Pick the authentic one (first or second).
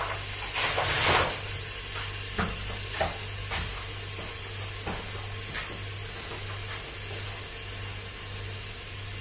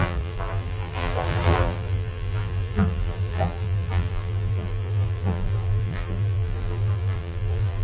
first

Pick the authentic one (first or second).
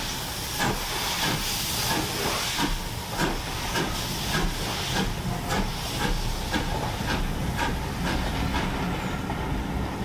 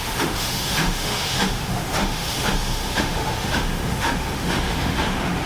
first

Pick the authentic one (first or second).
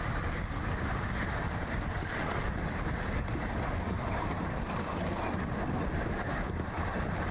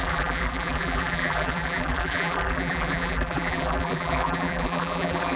first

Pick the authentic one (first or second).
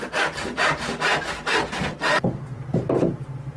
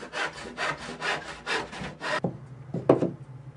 second